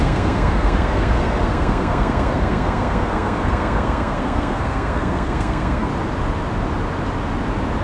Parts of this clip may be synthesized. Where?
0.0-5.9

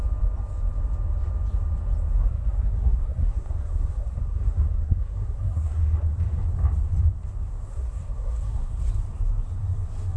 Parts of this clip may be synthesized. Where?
2.2-5.8; 7.7-8.7

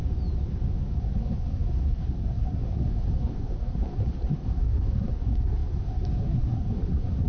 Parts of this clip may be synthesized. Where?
1.0-7.3

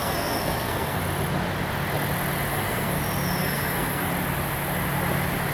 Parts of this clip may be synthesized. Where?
0.0-1.0; 2.5-3.0; 3.4-4.1

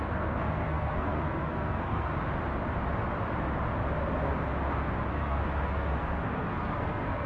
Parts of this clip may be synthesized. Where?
0.0-2.1; 5.1-7.3

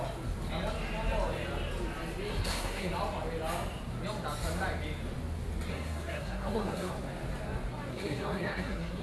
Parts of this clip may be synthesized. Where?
2.3-2.9; 5.7-6.9; 7.9-9.0

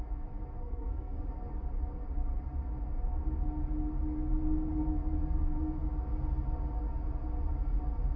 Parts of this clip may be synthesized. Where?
0.6-1.2

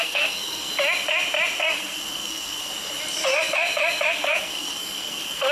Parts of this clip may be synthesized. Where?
0.0-0.7; 1.6-2.7; 4.1-5.5